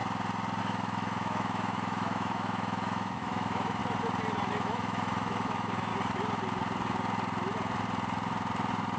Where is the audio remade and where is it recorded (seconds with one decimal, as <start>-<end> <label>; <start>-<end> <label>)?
0.0-0.6 recorded; 0.6-3.8 remade; 3.8-4.5 recorded; 4.5-5.9 remade; 5.9-9.0 recorded